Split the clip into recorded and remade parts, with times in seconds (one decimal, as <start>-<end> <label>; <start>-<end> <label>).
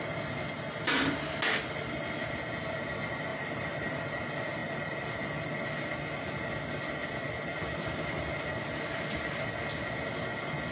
0.0-3.3 recorded; 3.3-4.0 remade; 4.0-10.7 recorded